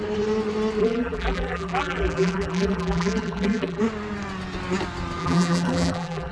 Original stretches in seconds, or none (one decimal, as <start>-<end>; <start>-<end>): 0.0-0.8; 3.8-5.2